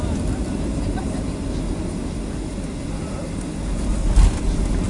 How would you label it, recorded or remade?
recorded